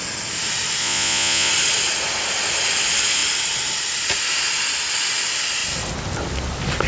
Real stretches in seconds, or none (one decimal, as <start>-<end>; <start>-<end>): 0.0-0.8; 1.5-6.9